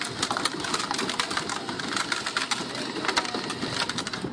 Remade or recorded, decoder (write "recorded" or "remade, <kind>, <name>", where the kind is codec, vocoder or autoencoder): recorded